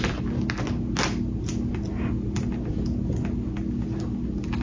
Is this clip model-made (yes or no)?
no